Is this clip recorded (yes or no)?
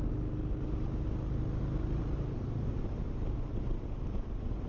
yes